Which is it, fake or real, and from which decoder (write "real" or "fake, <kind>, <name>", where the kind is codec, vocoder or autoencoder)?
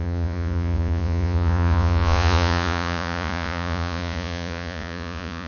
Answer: fake, vocoder, Vocos